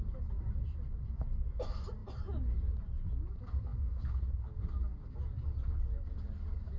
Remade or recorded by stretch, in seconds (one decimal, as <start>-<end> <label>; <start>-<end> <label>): 0.0-6.8 recorded